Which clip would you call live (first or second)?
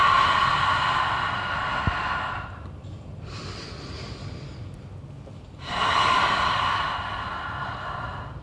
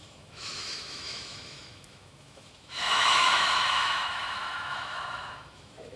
first